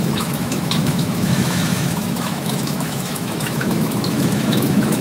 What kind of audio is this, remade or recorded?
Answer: remade